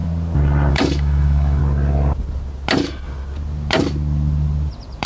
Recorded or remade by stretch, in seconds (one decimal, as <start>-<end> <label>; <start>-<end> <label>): 0.0-0.7 recorded; 0.7-1.6 remade; 1.6-5.1 recorded